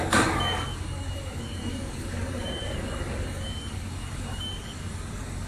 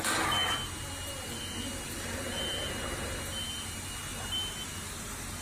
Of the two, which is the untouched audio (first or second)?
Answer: second